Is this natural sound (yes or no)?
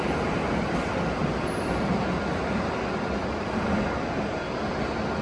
yes